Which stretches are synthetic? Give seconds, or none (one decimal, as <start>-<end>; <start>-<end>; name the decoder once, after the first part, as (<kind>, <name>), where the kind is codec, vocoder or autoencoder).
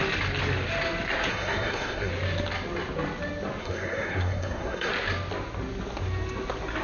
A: 1.3-2.1 (codec, SNAC); 3.6-4.9